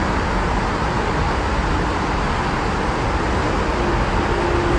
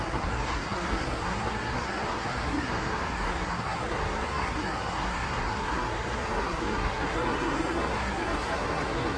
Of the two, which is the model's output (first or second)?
second